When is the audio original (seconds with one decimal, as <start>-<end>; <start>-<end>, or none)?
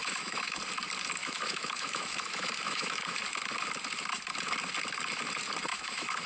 0.6-1.2; 3.2-5.7